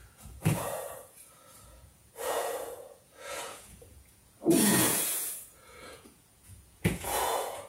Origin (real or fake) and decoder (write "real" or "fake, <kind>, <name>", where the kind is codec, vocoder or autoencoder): fake, vocoder, Vocos